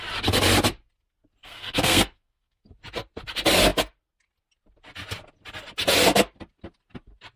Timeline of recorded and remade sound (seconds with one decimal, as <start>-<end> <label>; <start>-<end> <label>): 0.0-1.4 recorded; 1.4-2.6 remade; 2.6-7.4 recorded